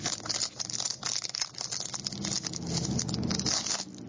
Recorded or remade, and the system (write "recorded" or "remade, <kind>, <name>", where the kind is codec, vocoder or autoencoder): recorded